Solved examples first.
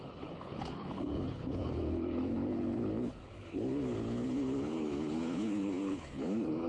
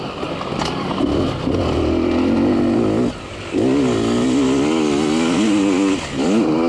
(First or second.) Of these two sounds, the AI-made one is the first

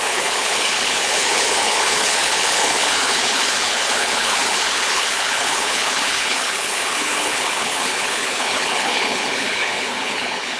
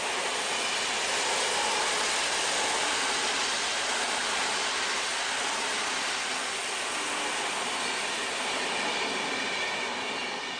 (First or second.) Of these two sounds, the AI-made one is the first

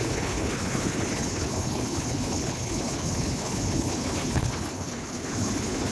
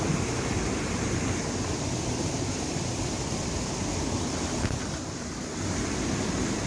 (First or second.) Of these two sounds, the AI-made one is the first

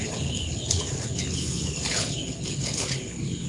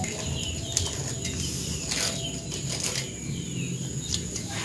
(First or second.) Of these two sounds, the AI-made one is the first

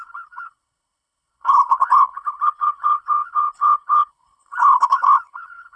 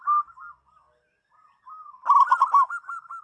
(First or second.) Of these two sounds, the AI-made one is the first